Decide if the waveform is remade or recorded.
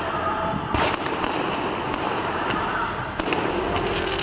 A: remade